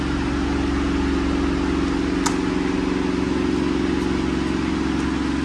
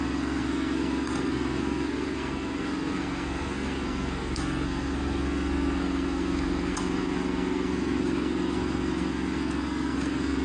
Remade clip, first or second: second